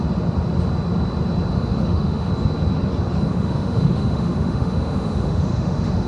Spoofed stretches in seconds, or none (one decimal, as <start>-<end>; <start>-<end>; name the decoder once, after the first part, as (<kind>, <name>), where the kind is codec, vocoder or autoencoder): 1.5-2.3 (autoencoder, DAC-VAE); 3.3-6.1